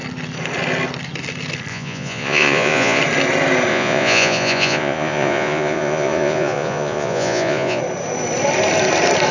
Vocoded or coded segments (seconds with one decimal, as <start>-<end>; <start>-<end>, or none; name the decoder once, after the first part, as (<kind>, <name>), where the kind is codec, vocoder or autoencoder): 1.7-3.0 (vocoder, Vocos); 3.7-7.8